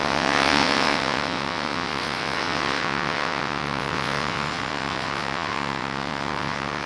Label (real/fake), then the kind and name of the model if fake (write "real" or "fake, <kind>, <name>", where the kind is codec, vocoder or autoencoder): fake, vocoder, WaveNeXt